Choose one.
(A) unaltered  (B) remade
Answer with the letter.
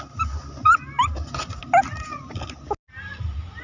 A